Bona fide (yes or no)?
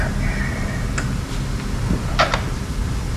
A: yes